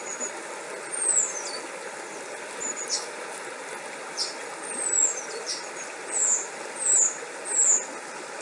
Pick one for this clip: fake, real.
real